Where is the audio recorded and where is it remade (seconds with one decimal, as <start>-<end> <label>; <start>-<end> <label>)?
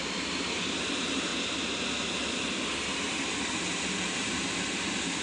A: 0.0-0.9 recorded; 0.9-1.3 remade; 1.3-4.1 recorded; 4.1-5.2 remade